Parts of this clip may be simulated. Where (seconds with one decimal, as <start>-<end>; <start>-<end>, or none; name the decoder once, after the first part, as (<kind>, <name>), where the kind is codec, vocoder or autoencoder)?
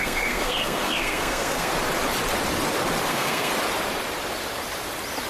0.0-1.7 (codec, SNAC); 3.1-3.5